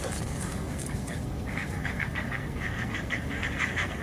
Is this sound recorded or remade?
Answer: remade